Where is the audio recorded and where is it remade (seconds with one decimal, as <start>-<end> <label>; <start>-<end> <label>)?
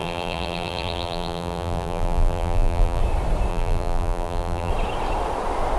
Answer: 0.0-3.0 remade; 3.0-3.5 recorded; 3.5-4.7 remade; 4.7-5.8 recorded